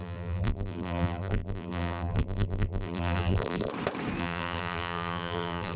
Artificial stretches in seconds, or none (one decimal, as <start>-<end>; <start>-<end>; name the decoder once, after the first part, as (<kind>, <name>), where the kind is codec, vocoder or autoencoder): 0.0-3.7 (vocoder, BigVGAN v2); 4.2-5.8